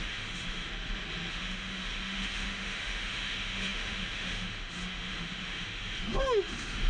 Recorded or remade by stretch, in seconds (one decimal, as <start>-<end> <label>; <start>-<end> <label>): 0.0-0.7 remade; 0.7-1.3 recorded; 1.3-6.9 remade